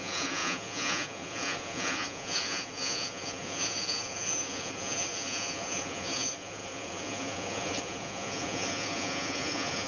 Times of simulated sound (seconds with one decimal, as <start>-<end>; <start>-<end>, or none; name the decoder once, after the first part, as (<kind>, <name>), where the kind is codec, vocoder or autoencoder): 0.0-9.9 (vocoder, Vocos)